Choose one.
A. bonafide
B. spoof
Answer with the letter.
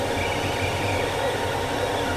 A